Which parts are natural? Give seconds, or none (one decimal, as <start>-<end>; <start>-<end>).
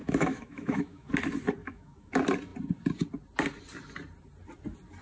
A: 1.1-1.6; 2.1-5.0